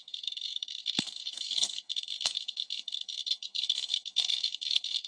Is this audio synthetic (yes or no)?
yes